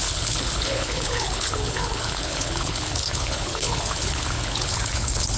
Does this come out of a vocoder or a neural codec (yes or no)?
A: yes